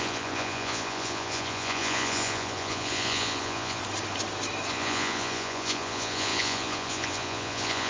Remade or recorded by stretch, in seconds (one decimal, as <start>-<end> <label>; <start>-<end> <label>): 0.0-3.8 remade; 3.8-4.7 recorded; 4.7-7.9 remade